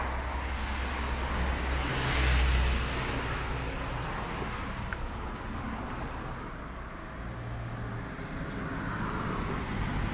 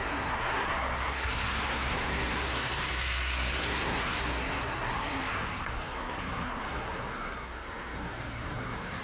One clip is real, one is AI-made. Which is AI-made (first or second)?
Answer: second